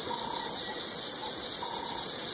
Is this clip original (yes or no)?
yes